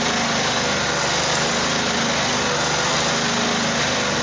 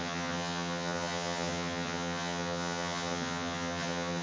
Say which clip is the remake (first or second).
second